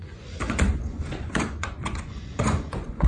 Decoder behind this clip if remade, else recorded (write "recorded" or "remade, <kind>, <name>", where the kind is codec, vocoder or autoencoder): remade, vocoder, Vocos